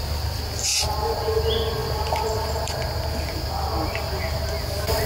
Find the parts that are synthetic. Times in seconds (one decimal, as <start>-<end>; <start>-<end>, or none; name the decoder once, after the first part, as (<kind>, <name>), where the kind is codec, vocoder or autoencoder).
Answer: none